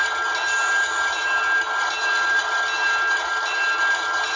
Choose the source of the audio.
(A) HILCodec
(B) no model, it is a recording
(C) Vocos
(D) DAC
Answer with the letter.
B